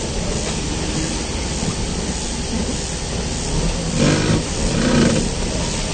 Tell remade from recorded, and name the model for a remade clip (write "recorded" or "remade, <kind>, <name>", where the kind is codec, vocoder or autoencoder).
recorded